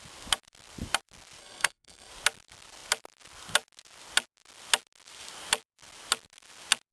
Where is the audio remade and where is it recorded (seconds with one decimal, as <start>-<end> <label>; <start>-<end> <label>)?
0.0-1.4 recorded; 1.4-2.1 remade; 2.1-6.9 recorded